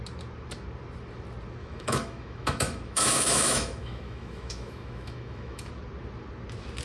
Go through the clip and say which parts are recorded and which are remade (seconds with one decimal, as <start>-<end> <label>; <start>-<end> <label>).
0.0-1.6 recorded; 1.6-5.7 remade; 5.7-6.8 recorded